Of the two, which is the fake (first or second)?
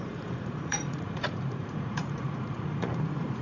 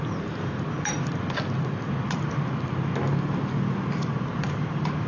first